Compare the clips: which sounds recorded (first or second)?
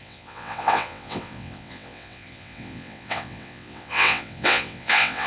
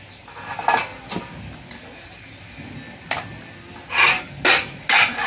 second